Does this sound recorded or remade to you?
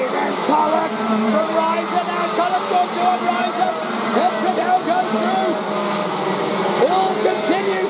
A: recorded